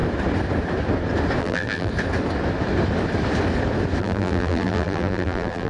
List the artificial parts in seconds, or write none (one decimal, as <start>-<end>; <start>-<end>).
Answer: 1.4-1.9; 4.0-5.7

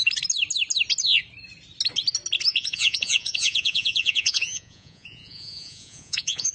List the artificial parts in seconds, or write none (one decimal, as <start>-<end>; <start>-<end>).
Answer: 2.5-6.5

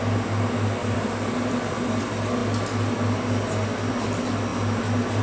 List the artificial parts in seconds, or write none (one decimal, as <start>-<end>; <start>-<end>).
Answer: 0.8-2.0